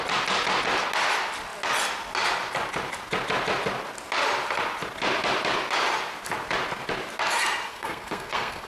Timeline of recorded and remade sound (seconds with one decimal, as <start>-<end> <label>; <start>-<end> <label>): 0.0-7.7 recorded; 7.7-8.7 remade